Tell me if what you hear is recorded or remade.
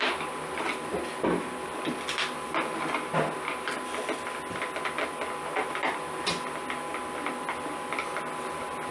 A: recorded